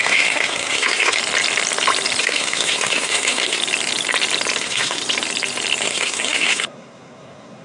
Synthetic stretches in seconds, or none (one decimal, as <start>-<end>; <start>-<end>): 0.0-1.2; 2.2-3.6; 4.6-5.0; 5.8-7.6